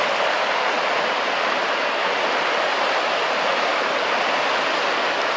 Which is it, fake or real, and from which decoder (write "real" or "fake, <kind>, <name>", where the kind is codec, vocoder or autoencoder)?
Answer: real